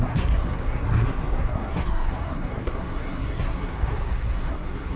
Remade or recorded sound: remade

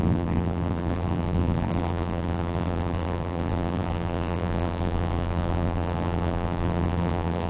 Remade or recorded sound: remade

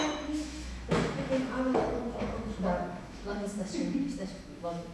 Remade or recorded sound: remade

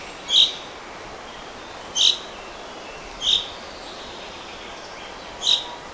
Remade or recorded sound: recorded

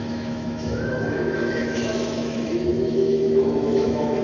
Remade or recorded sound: remade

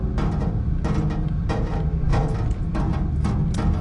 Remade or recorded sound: recorded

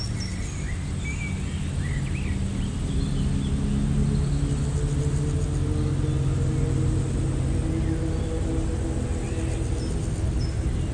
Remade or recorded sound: recorded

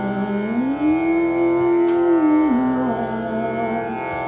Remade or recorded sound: recorded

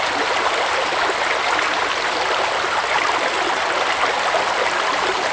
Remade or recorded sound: recorded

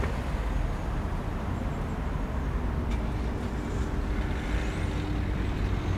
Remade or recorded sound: recorded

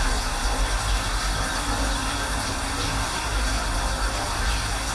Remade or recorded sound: recorded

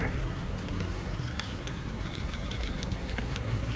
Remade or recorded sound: remade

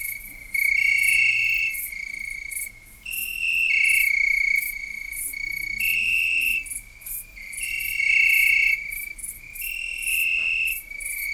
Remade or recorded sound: recorded